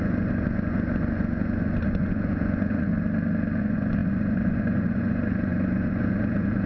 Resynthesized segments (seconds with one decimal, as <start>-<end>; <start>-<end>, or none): 0.0-2.9; 3.6-6.7